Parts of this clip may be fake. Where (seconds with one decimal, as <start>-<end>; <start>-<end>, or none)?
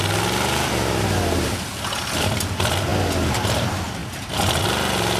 none